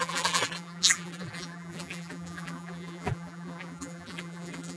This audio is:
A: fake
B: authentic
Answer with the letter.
A